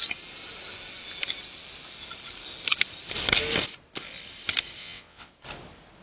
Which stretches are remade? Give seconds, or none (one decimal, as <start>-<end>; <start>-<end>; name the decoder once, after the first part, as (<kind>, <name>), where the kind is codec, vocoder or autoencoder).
4.8-5.3 (vocoder, WaveNeXt)